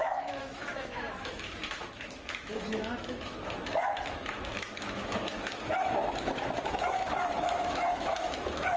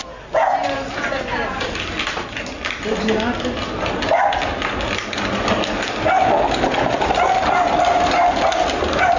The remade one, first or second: first